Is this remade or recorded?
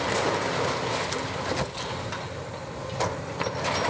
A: recorded